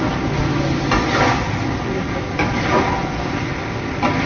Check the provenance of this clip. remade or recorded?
recorded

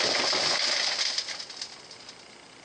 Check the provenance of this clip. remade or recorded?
recorded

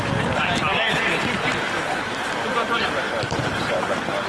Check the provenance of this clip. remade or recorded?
remade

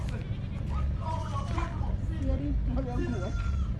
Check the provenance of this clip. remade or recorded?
recorded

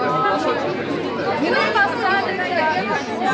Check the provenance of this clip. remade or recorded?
recorded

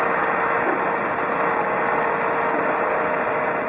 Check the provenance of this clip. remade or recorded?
recorded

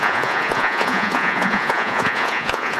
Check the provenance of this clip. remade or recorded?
remade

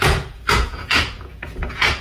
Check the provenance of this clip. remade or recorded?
remade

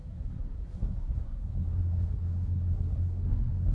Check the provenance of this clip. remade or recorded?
remade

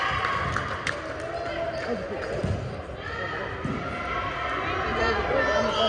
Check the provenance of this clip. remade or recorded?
recorded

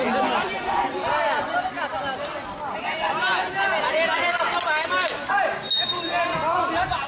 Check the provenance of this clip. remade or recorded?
recorded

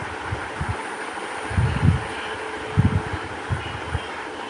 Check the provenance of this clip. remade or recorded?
recorded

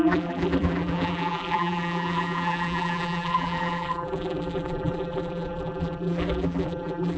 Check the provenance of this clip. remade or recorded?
remade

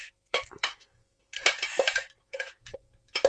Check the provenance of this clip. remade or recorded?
remade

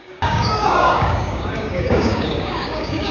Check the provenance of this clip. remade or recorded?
remade